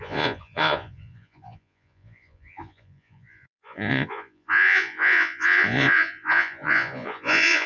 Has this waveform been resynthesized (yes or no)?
yes